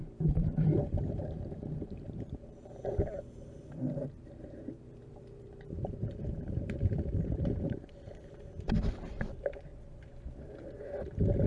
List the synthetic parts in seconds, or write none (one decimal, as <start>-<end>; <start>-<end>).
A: 0.0-9.7